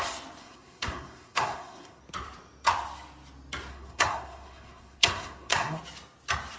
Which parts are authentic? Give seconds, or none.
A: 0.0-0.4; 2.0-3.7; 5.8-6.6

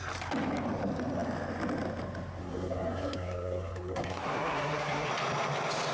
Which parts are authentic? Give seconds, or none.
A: 0.0-2.4; 5.1-5.9

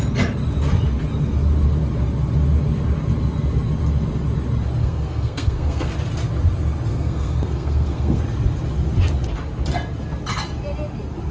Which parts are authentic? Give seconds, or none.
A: 0.0-4.8; 5.9-6.9; 8.2-11.3

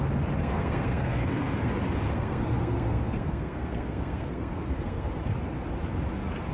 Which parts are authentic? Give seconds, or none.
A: 0.0-0.4; 1.7-2.1; 5.1-6.5

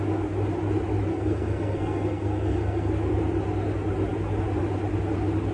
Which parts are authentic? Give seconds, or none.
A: 0.0-1.1; 2.9-5.5

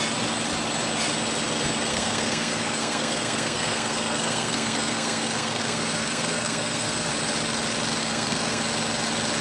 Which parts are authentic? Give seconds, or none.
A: 0.0-1.9; 7.1-8.0; 8.6-9.4